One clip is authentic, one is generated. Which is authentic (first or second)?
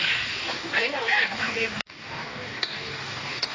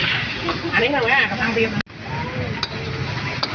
second